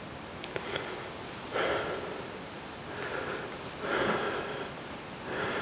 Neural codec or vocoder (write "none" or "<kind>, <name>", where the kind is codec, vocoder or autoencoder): none